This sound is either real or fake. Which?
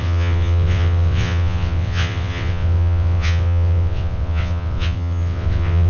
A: fake